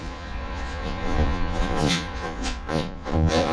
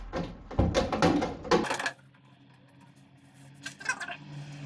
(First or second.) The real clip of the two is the second